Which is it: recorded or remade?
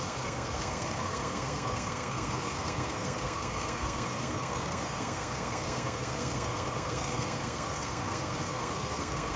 remade